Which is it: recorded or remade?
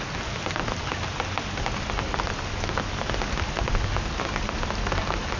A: recorded